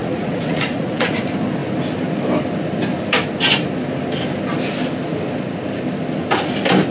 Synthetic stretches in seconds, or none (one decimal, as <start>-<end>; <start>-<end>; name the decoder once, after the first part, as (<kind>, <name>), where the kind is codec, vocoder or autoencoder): 0.0-1.2 (vocoder, Vocos)